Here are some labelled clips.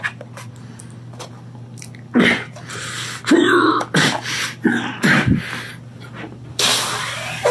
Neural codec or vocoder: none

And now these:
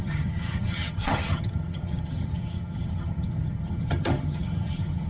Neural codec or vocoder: vocoder, HiFi-GAN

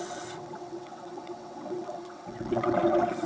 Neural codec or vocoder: vocoder, WaveNeXt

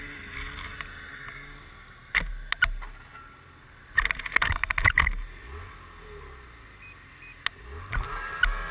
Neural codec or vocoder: none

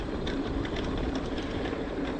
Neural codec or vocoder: vocoder, BigVGAN v2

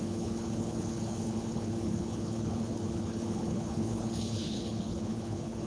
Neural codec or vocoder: codec, HILCodec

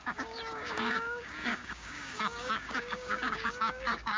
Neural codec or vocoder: codec, DAC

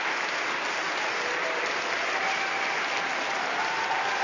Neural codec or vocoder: none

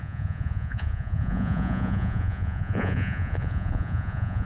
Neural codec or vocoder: vocoder, Vocos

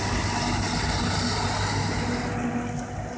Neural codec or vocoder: none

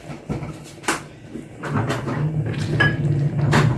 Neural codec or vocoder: none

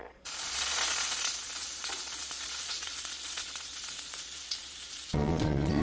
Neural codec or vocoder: vocoder, Vocos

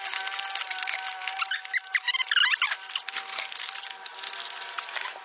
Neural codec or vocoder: none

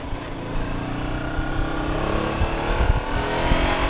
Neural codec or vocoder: none